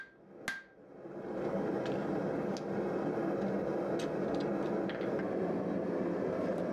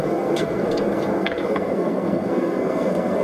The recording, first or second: first